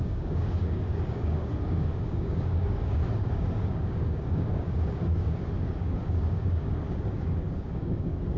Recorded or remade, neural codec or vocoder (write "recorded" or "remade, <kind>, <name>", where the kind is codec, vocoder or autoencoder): remade, codec, DAC